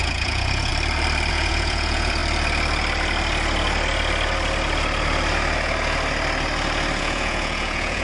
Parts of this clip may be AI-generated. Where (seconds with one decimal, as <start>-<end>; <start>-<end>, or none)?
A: 0.0-0.7; 1.3-2.2; 7.0-8.0